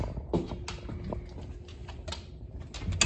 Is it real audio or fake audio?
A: real